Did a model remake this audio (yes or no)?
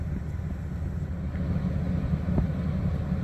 no